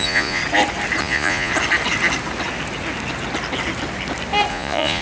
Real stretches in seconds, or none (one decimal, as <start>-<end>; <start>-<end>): 0.4-1.0; 1.5-4.5